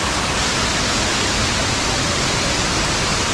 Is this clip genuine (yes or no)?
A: yes